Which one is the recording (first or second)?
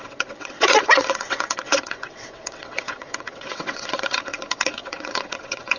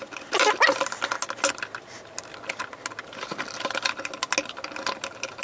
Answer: second